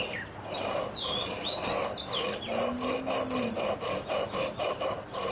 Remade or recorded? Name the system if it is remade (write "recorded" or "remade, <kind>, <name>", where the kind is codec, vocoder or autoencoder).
recorded